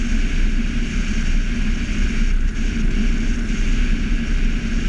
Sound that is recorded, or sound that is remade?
recorded